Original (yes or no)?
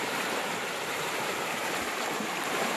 no